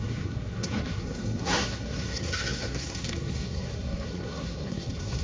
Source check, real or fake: fake